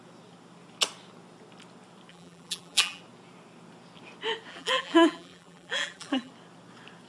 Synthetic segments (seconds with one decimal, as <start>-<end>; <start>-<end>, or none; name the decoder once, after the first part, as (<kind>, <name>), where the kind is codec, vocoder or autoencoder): 2.1-3.0 (vocoder, BigVGAN v2); 4.5-6.3